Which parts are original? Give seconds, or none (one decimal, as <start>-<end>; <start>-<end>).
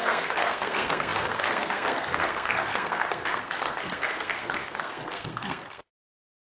none